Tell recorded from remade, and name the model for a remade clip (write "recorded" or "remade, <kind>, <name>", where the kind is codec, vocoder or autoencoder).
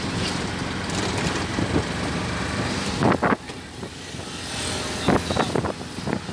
recorded